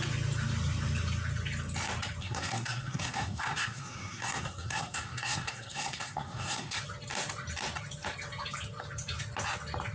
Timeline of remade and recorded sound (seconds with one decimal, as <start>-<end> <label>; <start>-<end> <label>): 0.0-2.2 recorded; 2.2-6.8 remade; 6.8-9.9 recorded